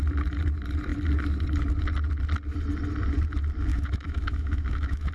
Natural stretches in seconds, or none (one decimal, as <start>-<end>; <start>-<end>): 0.0-3.7